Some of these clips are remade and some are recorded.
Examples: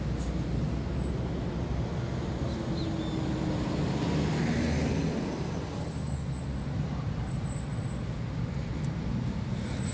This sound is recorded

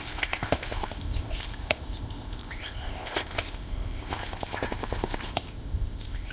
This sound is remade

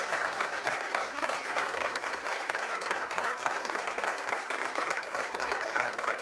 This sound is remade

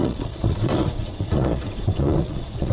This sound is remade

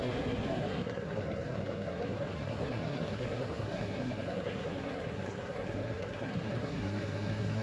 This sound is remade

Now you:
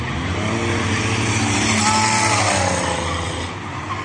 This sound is recorded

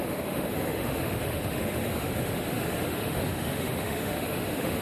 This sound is remade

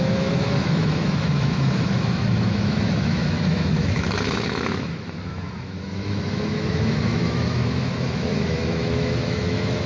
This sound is remade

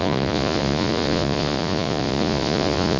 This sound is remade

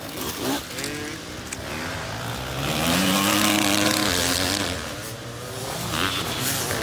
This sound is recorded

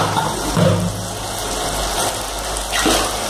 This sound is recorded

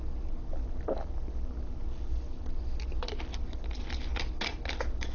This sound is recorded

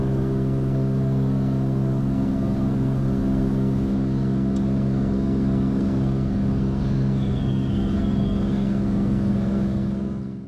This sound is remade